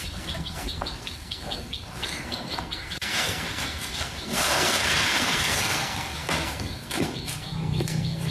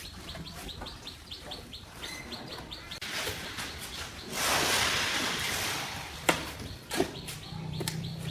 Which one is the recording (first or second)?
second